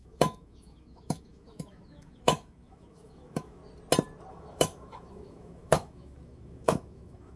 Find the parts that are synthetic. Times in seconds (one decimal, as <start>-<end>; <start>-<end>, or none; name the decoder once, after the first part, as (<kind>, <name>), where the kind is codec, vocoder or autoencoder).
0.0-3.6 (autoencoder, DAC-VAE); 4.3-7.4